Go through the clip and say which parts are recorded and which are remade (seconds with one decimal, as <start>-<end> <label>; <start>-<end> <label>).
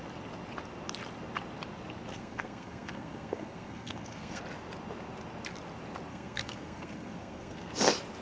0.0-2.1 recorded; 2.1-4.4 remade; 4.4-6.1 recorded; 6.1-7.7 remade; 7.7-8.2 recorded